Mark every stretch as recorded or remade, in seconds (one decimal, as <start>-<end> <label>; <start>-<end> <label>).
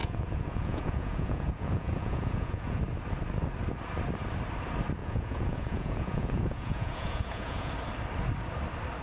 0.0-2.8 remade; 2.8-5.0 recorded; 5.0-7.7 remade; 7.7-9.0 recorded